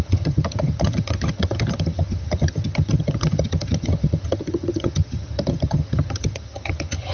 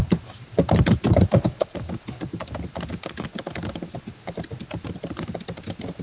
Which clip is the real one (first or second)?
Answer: second